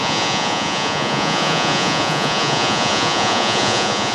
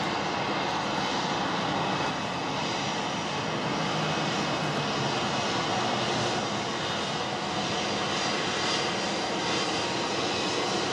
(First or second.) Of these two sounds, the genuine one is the second